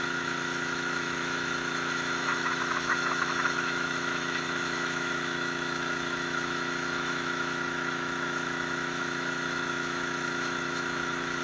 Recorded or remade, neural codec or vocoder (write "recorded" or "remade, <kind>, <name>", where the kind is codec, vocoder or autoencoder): remade, autoencoder, DAC-VAE